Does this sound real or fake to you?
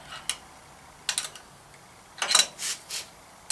real